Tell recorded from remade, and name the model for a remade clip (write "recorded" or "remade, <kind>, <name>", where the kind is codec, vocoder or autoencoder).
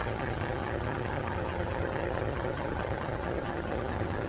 remade, vocoder, HiFi-GAN